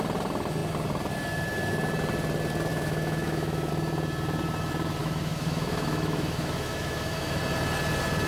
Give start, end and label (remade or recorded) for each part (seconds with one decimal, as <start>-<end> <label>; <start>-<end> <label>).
0.0-2.7 recorded; 2.7-3.7 remade; 3.7-5.0 recorded; 5.0-7.4 remade; 7.4-8.3 recorded